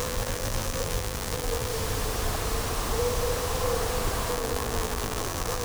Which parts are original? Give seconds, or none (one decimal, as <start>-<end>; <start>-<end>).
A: 1.7-4.3